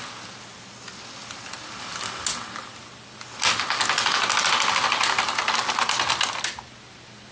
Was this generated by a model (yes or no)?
no